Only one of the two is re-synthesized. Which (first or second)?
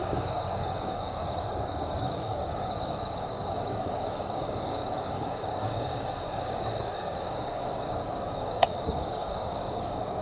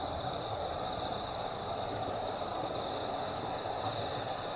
first